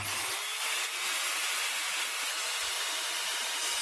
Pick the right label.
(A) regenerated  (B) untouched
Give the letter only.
B